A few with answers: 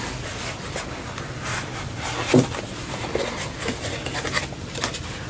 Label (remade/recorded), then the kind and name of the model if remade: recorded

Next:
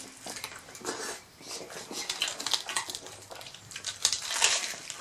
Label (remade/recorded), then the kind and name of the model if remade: recorded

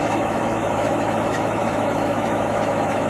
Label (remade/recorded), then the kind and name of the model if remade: remade, autoencoder, DAC-VAE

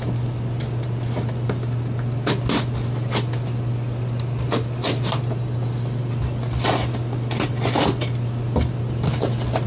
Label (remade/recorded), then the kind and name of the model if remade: recorded